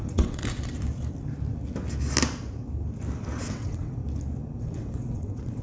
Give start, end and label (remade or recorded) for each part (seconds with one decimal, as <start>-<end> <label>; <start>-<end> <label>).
0.0-0.4 remade; 0.4-3.5 recorded; 3.5-4.0 remade; 4.0-4.6 recorded; 4.6-5.6 remade